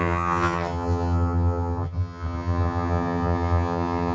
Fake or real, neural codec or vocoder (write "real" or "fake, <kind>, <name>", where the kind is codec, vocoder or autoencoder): fake, vocoder, HiFi-GAN